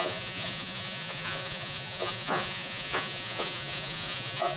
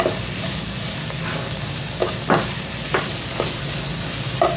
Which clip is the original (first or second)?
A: second